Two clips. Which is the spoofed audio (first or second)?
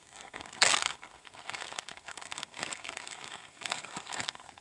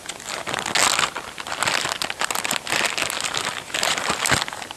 first